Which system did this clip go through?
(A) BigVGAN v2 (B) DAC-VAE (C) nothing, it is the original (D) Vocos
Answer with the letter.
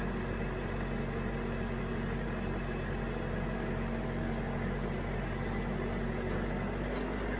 C